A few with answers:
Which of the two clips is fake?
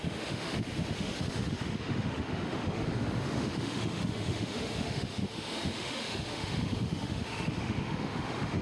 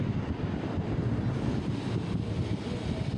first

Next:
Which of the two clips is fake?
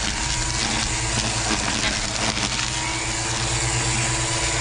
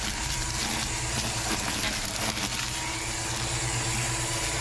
second